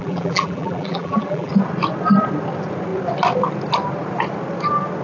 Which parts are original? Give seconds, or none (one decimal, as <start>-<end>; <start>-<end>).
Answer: 1.5-5.0